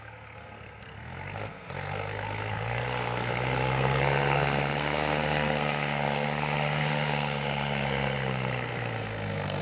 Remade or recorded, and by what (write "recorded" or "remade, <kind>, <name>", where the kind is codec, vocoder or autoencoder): remade, codec, SNAC